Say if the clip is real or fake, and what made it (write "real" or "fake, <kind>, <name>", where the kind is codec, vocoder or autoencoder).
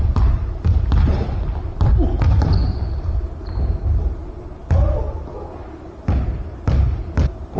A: real